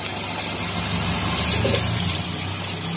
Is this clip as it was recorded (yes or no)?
yes